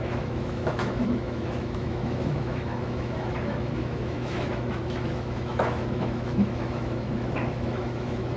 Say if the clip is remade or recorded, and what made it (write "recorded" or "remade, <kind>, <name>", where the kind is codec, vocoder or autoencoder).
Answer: remade, autoencoder, DAC-VAE